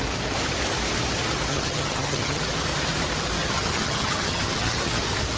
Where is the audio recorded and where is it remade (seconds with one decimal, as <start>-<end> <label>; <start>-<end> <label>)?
0.0-1.5 recorded; 1.5-2.4 remade; 2.4-3.4 recorded; 3.4-5.0 remade; 5.0-5.4 recorded